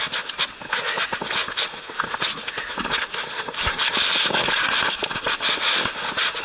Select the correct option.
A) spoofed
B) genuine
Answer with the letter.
B